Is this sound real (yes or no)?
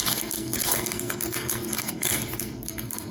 no